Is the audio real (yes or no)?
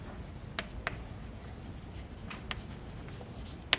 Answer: yes